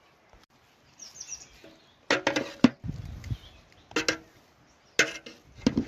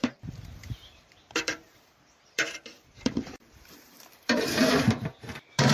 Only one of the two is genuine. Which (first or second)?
first